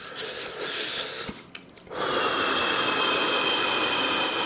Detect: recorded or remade recorded